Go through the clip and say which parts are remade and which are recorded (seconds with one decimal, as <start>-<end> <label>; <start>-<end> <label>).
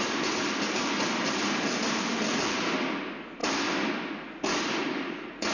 0.0-5.5 recorded